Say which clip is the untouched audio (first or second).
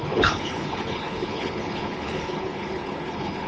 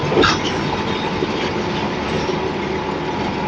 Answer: second